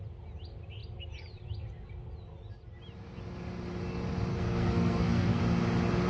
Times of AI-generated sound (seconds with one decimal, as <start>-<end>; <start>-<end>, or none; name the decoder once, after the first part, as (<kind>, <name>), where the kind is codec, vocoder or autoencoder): 4.3-5.4 (codec, SNAC)